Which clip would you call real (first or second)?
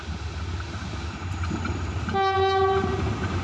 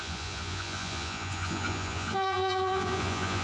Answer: first